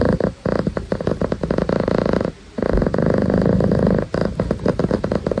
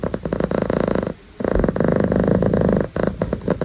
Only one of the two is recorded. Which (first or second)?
second